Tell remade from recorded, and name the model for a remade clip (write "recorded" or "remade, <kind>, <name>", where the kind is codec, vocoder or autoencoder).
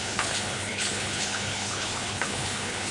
remade, codec, HILCodec